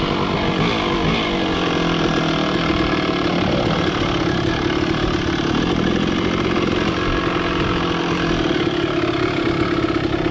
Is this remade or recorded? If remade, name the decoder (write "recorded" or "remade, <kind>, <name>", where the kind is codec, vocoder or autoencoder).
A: recorded